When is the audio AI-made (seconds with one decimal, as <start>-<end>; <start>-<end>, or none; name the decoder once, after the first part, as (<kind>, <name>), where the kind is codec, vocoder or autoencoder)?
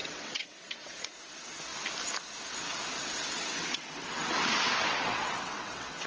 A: 0.0-1.2 (vocoder, WaveNeXt); 3.0-6.1